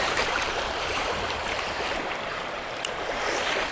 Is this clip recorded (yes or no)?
no